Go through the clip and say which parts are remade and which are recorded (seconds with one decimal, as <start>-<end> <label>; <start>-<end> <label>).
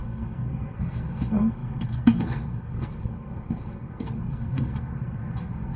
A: 0.0-5.8 remade